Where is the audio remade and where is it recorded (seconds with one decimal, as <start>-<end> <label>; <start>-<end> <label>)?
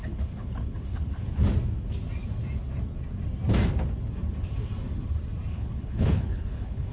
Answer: 0.0-1.4 remade; 1.4-5.5 recorded; 5.5-6.9 remade